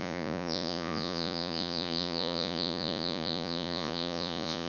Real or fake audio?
fake